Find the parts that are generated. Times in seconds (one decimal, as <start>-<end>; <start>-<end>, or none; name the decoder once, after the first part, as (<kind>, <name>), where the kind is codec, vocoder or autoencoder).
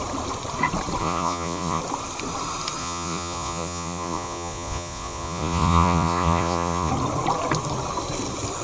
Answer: 1.0-1.8 (vocoder, Vocos); 2.8-6.9